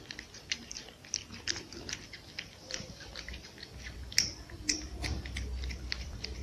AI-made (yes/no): yes